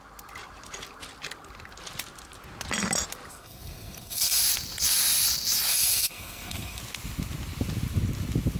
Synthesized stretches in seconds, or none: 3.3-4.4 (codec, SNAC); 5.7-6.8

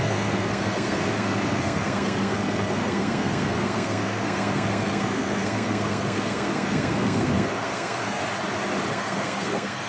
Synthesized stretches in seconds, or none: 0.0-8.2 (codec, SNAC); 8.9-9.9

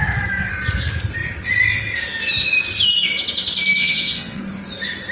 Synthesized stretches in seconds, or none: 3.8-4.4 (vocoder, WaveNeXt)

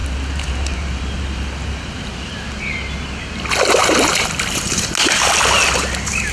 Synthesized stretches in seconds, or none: 0.0-2.3 (vocoder, BigVGAN v2); 3.8-4.8

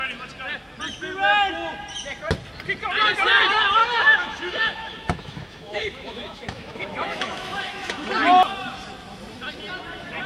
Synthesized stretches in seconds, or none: 3.8-8.1 (autoencoder, DAC-VAE)

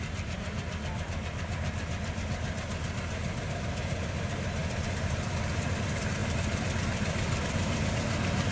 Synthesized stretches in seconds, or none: 4.6-5.5 (vocoder, BigVGAN v2); 6.2-7.9